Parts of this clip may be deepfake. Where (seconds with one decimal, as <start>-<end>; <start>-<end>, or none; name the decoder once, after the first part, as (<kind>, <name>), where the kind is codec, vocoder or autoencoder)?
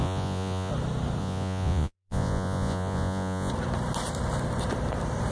0.0-0.7 (vocoder, Vocos); 1.2-3.5